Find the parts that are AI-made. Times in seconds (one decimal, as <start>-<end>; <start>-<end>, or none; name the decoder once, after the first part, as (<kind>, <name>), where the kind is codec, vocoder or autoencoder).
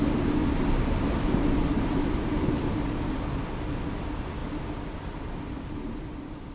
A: 0.4-1.4 (vocoder, BigVGAN v2)